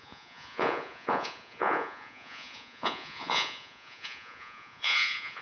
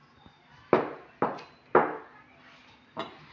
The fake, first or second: first